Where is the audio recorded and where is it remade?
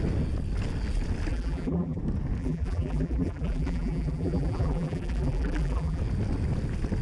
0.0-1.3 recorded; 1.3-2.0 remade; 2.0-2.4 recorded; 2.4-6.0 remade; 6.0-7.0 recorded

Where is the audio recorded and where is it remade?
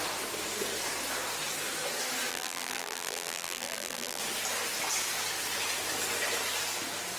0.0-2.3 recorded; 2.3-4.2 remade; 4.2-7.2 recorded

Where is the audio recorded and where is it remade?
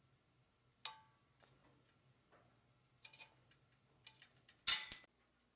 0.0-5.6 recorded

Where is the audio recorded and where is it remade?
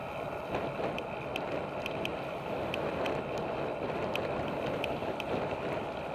0.0-0.8 remade; 0.8-2.1 recorded; 2.1-6.1 remade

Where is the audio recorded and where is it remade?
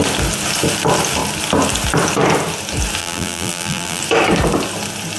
0.0-3.0 recorded; 3.0-4.0 remade; 4.0-5.2 recorded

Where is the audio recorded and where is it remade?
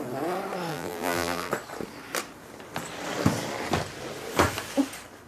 0.0-0.7 recorded; 0.7-1.5 remade; 1.5-5.3 recorded